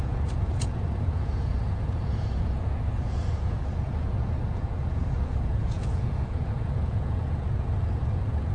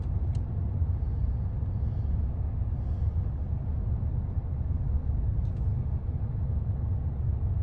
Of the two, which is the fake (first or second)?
first